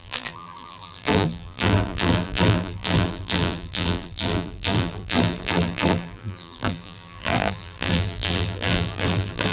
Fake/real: fake